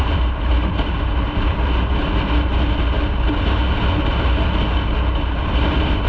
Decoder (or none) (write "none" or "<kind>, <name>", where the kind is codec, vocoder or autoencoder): none